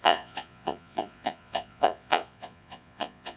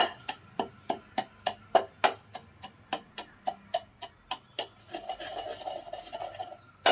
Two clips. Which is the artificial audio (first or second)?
first